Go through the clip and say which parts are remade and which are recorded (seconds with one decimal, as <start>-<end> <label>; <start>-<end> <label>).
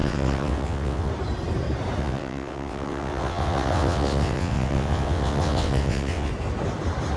0.0-1.1 remade; 1.1-2.0 recorded; 2.0-6.3 remade; 6.3-7.2 recorded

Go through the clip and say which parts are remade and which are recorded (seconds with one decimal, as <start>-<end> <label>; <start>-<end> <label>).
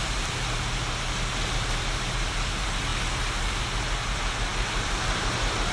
0.0-5.7 recorded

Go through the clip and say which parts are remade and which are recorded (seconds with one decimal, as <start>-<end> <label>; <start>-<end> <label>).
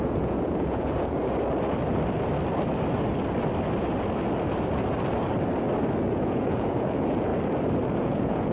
0.0-1.2 remade; 1.2-6.0 recorded; 6.0-7.3 remade; 7.3-8.0 recorded; 8.0-8.5 remade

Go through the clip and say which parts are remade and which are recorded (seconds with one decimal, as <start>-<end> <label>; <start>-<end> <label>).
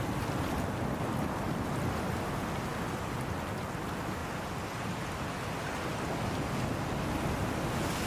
0.0-8.1 recorded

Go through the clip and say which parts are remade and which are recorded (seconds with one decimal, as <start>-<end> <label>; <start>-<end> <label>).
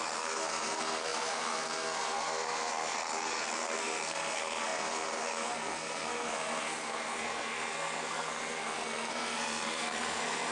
0.0-10.5 remade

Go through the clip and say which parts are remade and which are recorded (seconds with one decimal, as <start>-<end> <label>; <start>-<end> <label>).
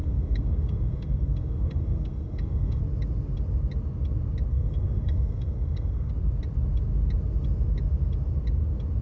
0.0-2.8 remade; 2.8-4.5 recorded; 4.5-6.1 remade; 6.1-9.0 recorded